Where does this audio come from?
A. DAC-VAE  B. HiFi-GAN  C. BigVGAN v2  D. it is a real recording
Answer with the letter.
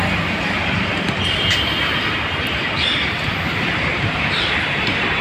C